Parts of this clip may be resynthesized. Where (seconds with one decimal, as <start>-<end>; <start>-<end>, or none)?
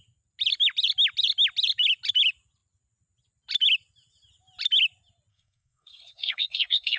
5.3-7.0